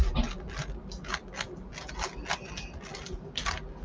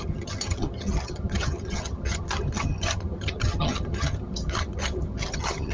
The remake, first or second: second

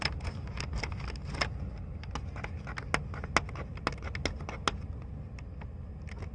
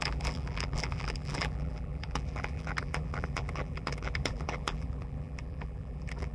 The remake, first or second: second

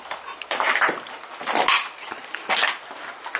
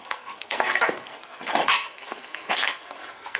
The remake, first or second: second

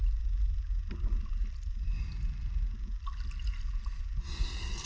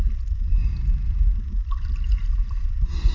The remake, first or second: second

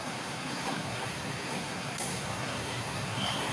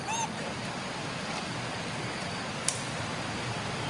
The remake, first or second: first